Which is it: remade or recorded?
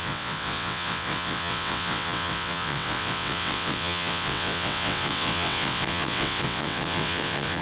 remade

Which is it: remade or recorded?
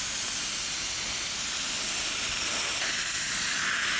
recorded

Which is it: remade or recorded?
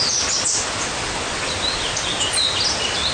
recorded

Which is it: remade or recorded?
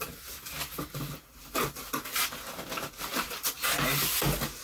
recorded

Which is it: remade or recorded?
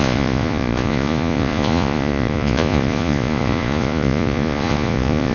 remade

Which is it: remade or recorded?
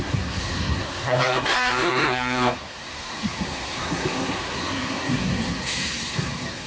remade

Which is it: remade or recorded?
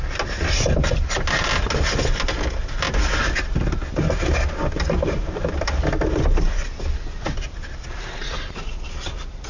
recorded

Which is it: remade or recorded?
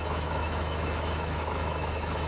remade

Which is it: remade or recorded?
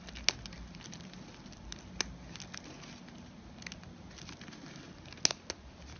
recorded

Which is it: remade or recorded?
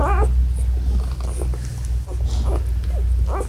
recorded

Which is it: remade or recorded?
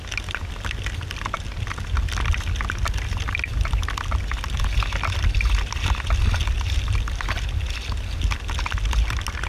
recorded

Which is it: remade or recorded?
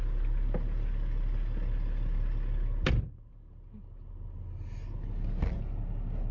recorded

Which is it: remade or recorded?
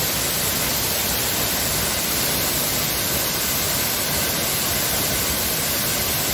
remade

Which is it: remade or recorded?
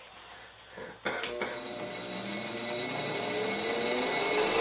recorded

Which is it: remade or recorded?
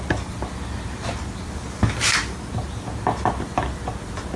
recorded